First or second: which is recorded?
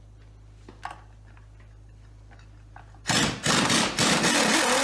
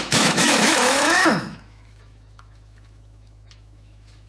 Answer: first